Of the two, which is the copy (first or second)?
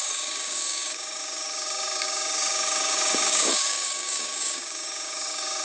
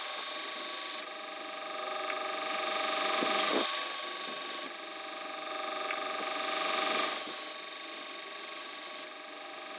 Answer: first